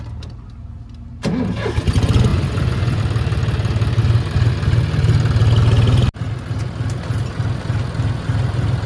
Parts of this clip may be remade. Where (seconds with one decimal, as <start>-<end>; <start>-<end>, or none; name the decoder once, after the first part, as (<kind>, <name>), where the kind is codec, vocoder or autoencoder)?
2.3-3.0 (vocoder, Vocos)